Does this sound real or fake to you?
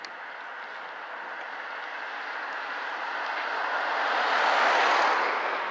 real